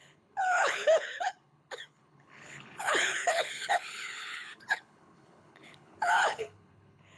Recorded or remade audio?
remade